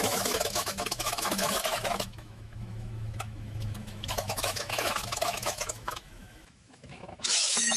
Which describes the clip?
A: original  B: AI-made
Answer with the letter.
B